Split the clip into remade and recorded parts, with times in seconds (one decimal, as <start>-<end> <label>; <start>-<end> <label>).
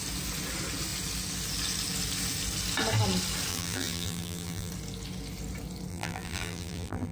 0.0-3.5 recorded; 3.5-4.7 remade; 4.7-5.9 recorded; 5.9-7.1 remade